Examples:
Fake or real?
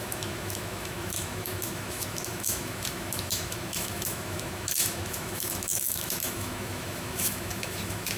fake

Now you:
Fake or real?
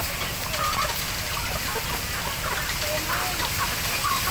real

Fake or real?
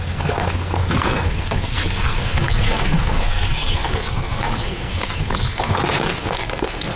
fake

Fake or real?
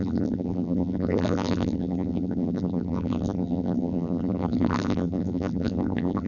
fake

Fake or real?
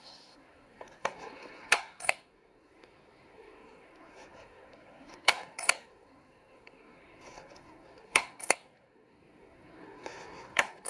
fake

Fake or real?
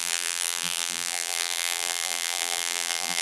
fake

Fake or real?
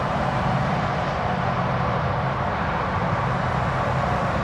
fake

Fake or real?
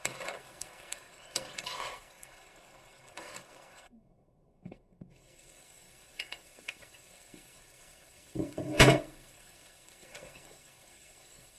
fake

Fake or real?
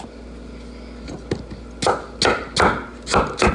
real